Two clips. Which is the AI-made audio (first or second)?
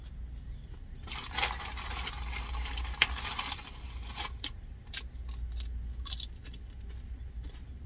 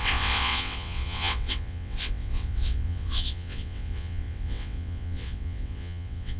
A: second